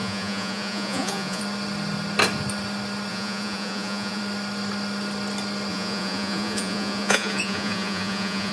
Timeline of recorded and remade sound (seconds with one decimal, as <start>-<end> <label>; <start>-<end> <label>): 0.0-1.4 remade; 1.4-3.1 recorded; 3.1-4.2 remade; 4.2-5.7 recorded; 5.7-8.5 remade